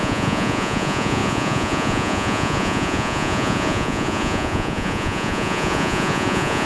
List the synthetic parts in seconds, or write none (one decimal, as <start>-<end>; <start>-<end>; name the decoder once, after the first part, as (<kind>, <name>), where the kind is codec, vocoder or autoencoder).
0.0-6.7 (vocoder, Vocos)